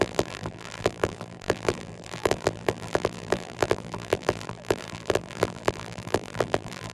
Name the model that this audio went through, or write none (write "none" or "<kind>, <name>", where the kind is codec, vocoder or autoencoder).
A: vocoder, BigVGAN v2